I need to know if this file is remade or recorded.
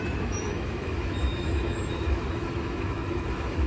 remade